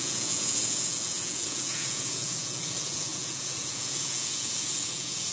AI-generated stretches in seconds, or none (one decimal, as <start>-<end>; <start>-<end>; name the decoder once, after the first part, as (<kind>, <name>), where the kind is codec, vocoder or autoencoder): 0.0-5.3 (vocoder, Vocos)